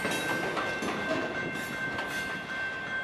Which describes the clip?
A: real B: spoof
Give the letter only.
A